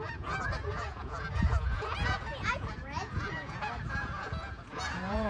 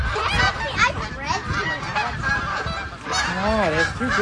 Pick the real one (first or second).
second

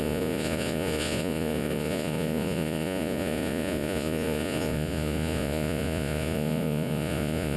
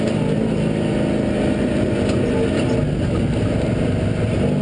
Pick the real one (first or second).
second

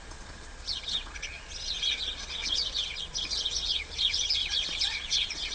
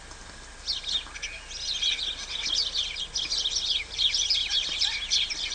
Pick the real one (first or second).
second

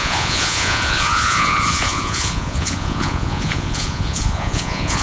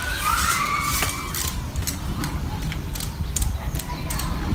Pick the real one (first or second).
second